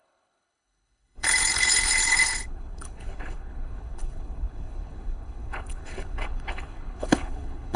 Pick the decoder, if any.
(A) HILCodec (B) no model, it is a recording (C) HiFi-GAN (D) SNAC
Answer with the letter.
A